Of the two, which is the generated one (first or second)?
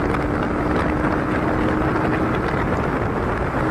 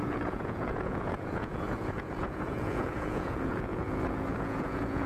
second